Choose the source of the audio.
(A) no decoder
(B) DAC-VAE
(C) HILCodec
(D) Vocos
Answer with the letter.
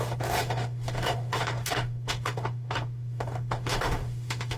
B